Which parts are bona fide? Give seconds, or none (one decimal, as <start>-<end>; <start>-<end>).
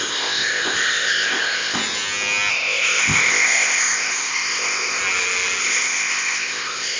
1.8-2.5; 5.0-5.6